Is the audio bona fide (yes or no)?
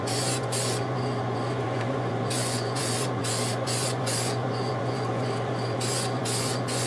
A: no